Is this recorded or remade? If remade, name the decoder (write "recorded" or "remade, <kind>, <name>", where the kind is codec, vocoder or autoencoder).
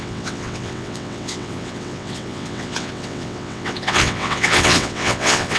remade, vocoder, WaveNeXt